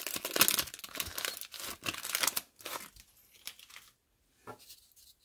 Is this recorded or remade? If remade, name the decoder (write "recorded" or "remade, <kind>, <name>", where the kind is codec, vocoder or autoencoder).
recorded